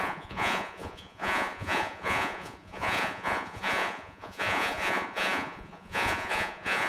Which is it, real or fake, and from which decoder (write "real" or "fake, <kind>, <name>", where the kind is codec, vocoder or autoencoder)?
fake, vocoder, Vocos